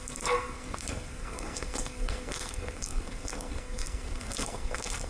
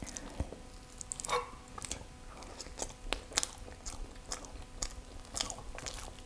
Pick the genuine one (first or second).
second